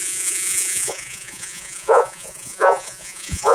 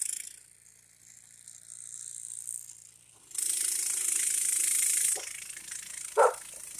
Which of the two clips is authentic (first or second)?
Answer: second